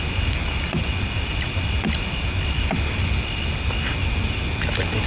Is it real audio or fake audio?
real